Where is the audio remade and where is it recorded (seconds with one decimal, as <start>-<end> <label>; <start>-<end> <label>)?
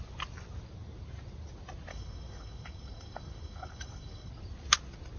0.0-1.9 recorded; 1.9-4.3 remade; 4.3-5.2 recorded